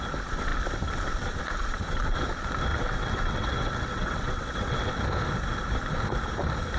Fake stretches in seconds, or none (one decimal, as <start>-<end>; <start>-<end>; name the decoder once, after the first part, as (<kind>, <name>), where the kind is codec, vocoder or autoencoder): 2.7-5.0 (vocoder, WaveNeXt)